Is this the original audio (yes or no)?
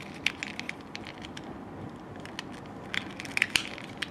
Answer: yes